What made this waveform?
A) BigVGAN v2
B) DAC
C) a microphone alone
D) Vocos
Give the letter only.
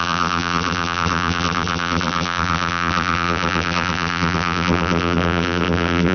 A